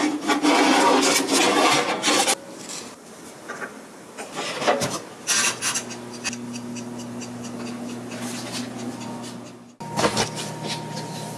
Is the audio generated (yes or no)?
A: no